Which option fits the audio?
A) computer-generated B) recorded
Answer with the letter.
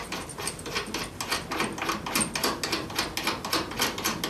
B